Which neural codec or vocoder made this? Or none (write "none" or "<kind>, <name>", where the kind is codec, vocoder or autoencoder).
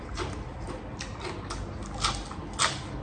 none